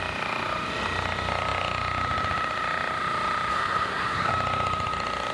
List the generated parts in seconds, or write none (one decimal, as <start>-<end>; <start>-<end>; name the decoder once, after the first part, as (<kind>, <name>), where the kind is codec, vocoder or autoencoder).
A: 3.5-4.3 (codec, SNAC)